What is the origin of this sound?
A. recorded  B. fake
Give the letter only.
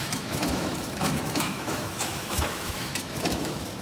B